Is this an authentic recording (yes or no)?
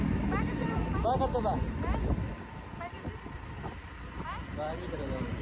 yes